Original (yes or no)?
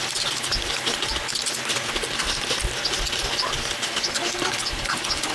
yes